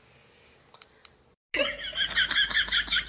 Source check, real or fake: real